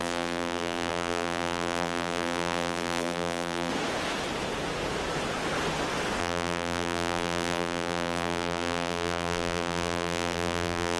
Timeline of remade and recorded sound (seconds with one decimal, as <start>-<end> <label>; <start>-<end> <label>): 0.0-3.7 remade; 3.7-6.2 recorded; 6.2-11.0 remade